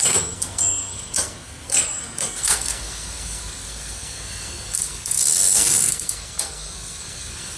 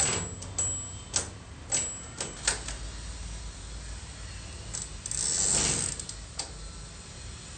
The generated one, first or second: first